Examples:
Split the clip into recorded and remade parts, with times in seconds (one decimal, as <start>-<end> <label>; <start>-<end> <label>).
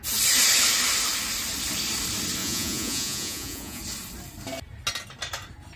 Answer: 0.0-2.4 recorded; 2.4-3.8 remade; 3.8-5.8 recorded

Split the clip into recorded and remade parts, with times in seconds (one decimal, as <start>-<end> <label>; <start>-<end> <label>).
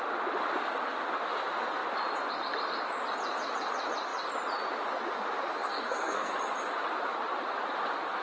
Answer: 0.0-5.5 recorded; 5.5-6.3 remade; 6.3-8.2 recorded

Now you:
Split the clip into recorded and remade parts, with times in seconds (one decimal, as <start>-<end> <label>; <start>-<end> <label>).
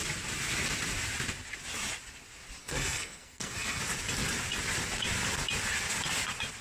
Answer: 0.0-2.6 recorded; 2.6-3.8 remade; 3.8-6.6 recorded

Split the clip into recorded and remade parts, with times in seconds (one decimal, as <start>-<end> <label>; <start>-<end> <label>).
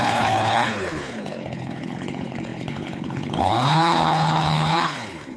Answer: 0.0-5.4 remade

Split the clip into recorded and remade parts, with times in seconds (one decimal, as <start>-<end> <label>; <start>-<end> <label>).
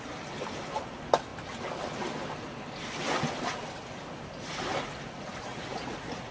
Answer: 0.0-5.5 recorded; 5.5-6.3 remade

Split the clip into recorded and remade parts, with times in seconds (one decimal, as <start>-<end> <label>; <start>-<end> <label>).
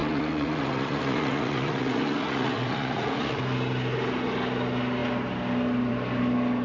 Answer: 0.0-3.4 remade; 3.4-6.6 recorded